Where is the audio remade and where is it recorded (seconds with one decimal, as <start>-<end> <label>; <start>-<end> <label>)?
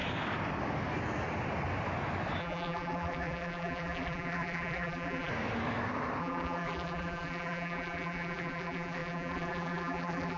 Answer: 0.0-2.4 recorded; 2.4-5.3 remade; 5.3-6.2 recorded; 6.2-10.4 remade